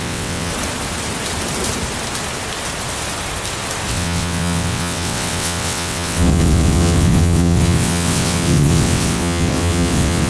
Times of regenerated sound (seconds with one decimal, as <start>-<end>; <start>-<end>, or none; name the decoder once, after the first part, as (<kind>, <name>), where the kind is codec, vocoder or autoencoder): 0.0-0.5 (vocoder, WaveNeXt); 3.9-10.3